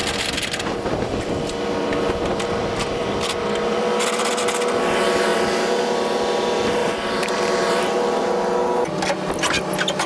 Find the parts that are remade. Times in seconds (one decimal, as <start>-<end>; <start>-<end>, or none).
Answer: 0.0-4.4; 6.8-8.3